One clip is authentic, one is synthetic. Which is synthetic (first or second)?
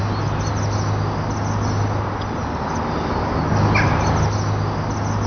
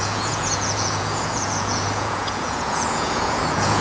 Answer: second